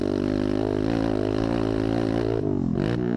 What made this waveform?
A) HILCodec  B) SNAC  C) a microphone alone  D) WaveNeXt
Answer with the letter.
C